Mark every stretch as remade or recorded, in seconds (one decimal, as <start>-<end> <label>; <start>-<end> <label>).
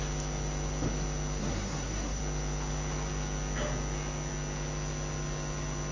0.0-1.4 recorded; 1.4-2.2 remade; 2.2-5.9 recorded